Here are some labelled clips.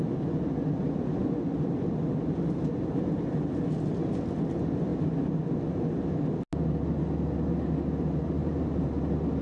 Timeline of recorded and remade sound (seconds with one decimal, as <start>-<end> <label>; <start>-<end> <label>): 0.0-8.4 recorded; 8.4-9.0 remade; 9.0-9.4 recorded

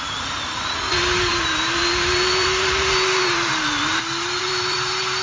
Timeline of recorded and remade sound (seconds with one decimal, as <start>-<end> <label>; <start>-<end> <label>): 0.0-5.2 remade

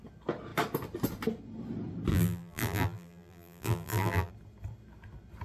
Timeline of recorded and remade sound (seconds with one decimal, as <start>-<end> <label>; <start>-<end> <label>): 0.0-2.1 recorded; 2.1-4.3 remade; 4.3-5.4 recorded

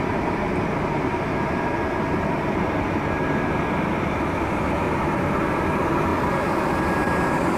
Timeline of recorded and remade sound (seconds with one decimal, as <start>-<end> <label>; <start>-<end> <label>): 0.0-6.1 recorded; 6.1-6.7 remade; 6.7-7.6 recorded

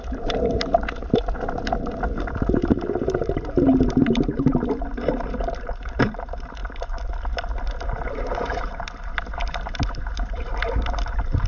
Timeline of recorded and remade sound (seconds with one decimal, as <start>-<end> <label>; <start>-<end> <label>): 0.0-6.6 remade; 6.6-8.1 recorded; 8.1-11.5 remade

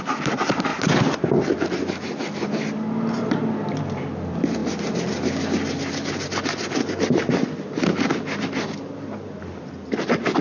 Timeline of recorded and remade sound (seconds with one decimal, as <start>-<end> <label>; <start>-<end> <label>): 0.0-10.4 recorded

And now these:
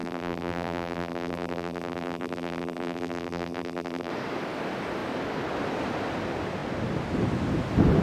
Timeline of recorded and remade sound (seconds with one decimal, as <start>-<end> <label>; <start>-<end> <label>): 0.0-4.1 remade; 4.1-8.0 recorded